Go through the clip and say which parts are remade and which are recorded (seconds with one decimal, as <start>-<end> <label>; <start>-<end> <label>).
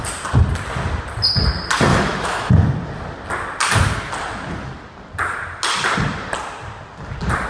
0.0-1.9 recorded; 1.9-2.5 remade; 2.5-7.5 recorded